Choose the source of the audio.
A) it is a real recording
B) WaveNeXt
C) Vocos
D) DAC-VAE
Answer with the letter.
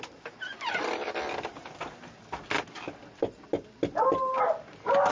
A